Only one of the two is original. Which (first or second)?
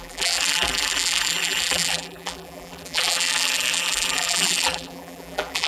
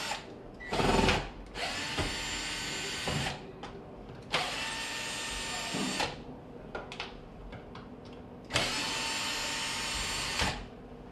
second